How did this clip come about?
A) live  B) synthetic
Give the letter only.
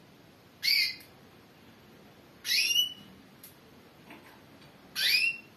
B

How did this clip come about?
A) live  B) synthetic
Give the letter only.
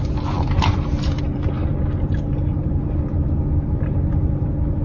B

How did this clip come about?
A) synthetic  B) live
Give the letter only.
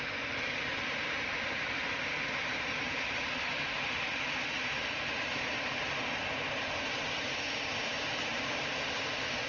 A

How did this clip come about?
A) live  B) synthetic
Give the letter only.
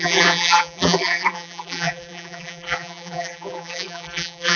B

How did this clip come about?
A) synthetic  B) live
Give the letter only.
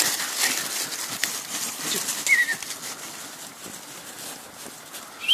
B